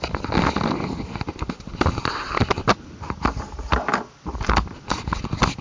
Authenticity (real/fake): real